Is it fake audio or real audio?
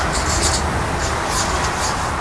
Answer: real